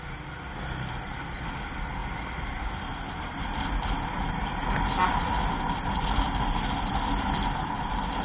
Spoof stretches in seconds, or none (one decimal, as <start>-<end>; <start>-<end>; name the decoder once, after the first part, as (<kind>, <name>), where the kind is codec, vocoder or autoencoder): none